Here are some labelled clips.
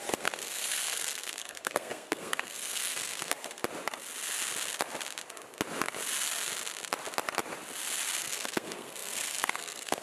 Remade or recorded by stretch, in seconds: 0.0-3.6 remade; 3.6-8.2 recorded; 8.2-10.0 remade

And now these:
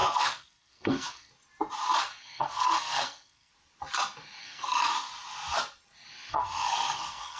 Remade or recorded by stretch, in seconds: 0.0-1.3 remade; 1.3-2.0 recorded; 2.0-3.5 remade; 3.5-4.4 recorded; 4.4-4.9 remade; 4.9-6.3 recorded; 6.3-7.4 remade

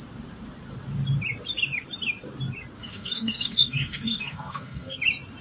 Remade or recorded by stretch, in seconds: 0.0-2.8 recorded; 2.8-5.0 remade; 5.0-5.4 recorded

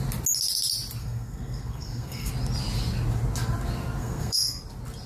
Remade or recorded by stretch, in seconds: 0.0-1.0 recorded; 1.0-2.3 remade; 2.3-4.0 recorded; 4.0-4.6 remade; 4.6-5.1 recorded

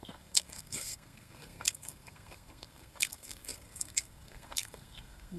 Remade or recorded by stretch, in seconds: 0.0-5.4 remade

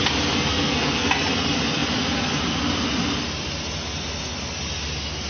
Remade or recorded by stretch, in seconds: 0.0-0.5 recorded; 0.5-1.1 remade; 1.1-5.3 recorded